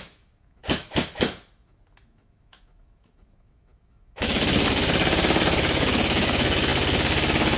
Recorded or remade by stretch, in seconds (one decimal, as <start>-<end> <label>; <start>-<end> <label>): 0.0-4.4 remade; 4.4-5.4 recorded; 5.4-6.7 remade; 6.7-7.6 recorded